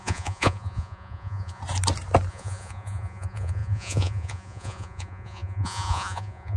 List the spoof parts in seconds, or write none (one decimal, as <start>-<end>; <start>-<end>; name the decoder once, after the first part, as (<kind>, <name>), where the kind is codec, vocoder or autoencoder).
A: 0.0-1.6 (vocoder, Vocos); 2.3-6.6